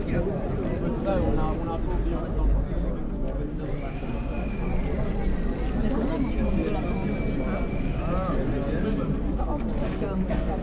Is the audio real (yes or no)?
yes